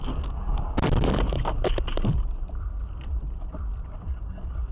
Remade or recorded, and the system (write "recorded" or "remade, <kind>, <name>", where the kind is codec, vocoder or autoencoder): remade, vocoder, BigVGAN v2